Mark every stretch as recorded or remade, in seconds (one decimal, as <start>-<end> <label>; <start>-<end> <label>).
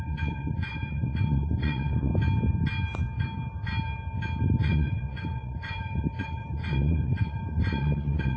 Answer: 0.0-2.1 remade; 2.1-4.6 recorded; 4.6-8.4 remade